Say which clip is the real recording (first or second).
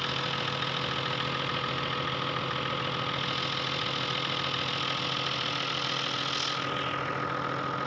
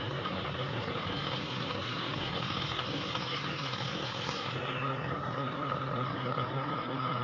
first